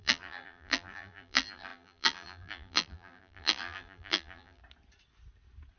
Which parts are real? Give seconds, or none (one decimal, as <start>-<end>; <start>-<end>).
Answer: 4.6-5.8